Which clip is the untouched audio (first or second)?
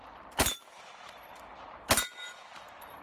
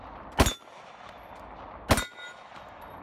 second